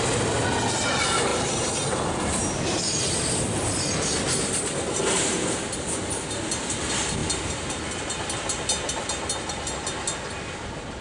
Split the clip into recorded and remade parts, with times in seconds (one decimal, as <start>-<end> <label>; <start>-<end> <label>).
0.0-11.0 recorded